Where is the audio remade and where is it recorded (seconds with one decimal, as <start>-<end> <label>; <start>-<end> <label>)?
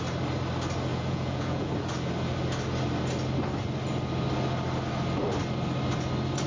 0.0-0.9 recorded; 0.9-1.7 remade; 1.7-6.5 recorded